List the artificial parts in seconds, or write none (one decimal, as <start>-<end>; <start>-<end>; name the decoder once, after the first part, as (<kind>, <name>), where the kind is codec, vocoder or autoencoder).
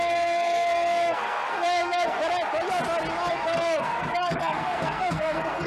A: 0.0-2.2 (codec, SNAC); 3.3-5.7